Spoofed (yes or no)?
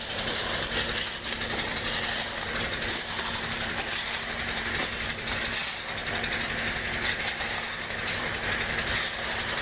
no